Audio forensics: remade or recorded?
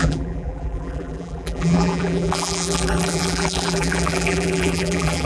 remade